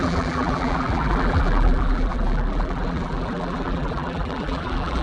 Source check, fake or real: fake